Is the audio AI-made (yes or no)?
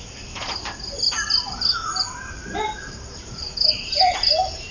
no